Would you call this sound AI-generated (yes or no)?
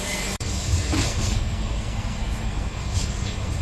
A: yes